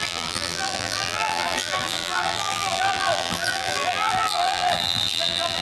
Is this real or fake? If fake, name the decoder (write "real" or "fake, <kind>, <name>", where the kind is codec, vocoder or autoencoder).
fake, vocoder, BigVGAN v2